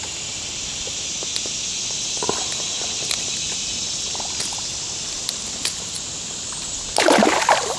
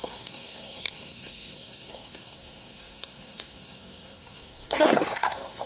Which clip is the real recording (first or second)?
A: first